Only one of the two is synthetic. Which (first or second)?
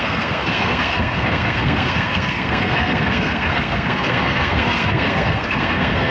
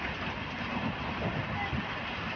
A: first